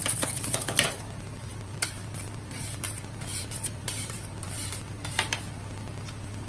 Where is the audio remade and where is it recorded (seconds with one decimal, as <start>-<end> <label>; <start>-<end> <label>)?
0.0-1.0 remade; 1.0-1.5 recorded; 1.5-5.4 remade; 5.4-6.5 recorded

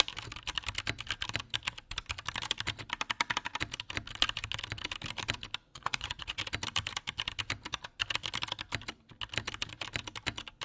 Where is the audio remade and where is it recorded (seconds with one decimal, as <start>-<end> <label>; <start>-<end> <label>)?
0.0-5.6 recorded; 5.6-6.4 remade; 6.4-10.6 recorded

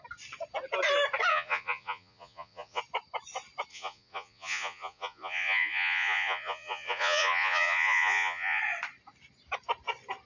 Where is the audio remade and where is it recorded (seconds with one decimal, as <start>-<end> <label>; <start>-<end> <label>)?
0.0-1.3 recorded; 1.3-2.8 remade; 2.8-3.7 recorded; 3.7-8.6 remade; 8.6-10.3 recorded

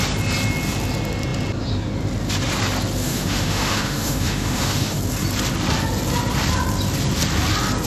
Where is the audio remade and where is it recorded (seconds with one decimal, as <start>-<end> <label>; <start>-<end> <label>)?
0.0-3.0 recorded; 3.0-5.0 remade; 5.0-7.9 recorded

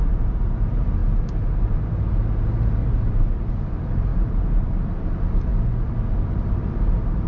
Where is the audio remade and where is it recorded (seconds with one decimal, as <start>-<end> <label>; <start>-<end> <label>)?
0.0-2.8 recorded; 2.8-3.5 remade; 3.5-7.3 recorded

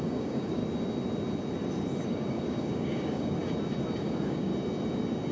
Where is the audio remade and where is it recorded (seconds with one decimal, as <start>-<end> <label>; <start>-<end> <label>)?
0.0-0.6 remade; 0.6-2.0 recorded; 2.0-3.4 remade; 3.4-4.0 recorded; 4.0-4.5 remade; 4.5-5.3 recorded